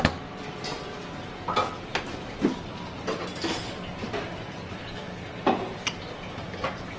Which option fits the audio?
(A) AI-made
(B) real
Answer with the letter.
B